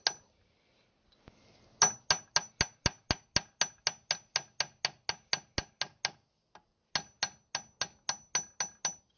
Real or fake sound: real